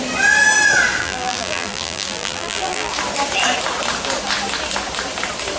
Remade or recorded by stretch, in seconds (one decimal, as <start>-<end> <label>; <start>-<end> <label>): 0.0-1.0 recorded; 1.0-2.9 remade; 2.9-5.6 recorded